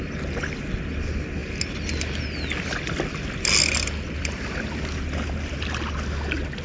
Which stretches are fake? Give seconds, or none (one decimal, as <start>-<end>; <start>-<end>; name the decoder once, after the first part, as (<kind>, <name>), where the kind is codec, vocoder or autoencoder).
none